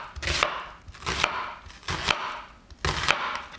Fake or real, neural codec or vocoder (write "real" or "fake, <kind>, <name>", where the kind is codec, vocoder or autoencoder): real